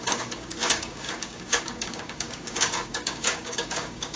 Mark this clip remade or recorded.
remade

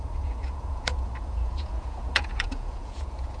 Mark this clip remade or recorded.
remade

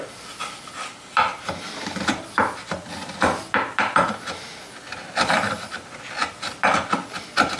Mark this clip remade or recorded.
recorded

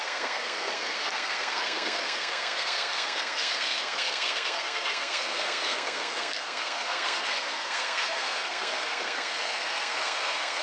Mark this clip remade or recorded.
remade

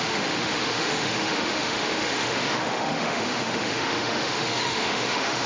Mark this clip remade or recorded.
remade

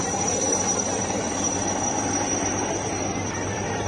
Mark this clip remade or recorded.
remade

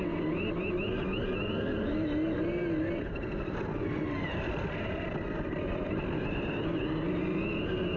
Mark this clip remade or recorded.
recorded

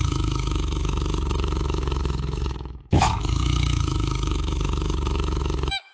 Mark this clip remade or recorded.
remade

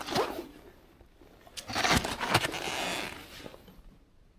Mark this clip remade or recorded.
recorded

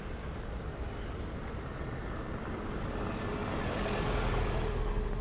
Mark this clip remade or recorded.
recorded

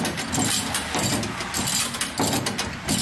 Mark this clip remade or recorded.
recorded